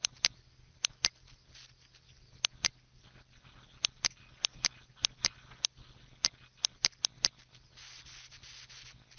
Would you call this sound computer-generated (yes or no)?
no